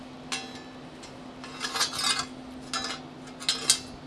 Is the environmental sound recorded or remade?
recorded